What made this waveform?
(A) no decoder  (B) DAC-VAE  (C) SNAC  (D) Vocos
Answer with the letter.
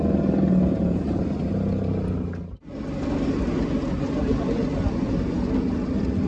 A